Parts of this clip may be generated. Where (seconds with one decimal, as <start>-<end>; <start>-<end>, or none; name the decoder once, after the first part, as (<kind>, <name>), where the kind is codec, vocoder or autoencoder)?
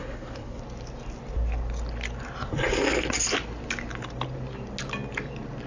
0.0-0.6 (codec, HILCodec)